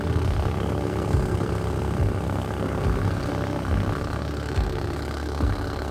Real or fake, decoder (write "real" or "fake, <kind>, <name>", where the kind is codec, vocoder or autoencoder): fake, codec, SNAC